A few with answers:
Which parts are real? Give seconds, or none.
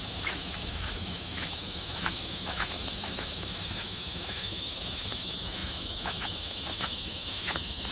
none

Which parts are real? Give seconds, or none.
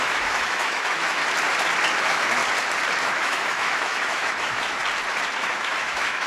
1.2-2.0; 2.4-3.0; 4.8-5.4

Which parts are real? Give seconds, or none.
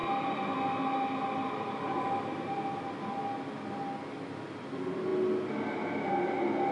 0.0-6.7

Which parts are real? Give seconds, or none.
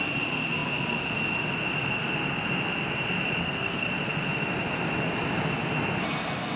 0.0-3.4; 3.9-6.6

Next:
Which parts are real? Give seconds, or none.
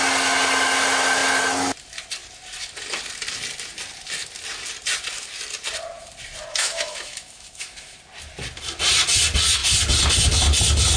0.0-6.5; 8.0-11.0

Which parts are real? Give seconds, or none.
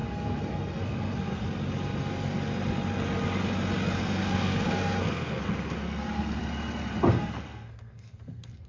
1.4-4.0; 6.4-7.1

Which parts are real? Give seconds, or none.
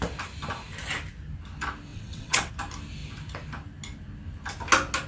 0.0-1.9; 2.5-5.1